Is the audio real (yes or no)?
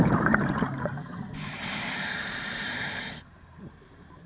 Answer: no